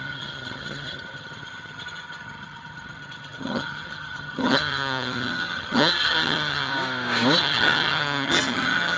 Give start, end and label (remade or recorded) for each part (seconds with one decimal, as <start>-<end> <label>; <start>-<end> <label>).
0.0-6.7 remade; 6.7-7.4 recorded; 7.4-9.0 remade